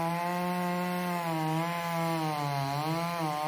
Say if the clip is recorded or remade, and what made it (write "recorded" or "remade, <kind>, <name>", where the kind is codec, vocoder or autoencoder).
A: recorded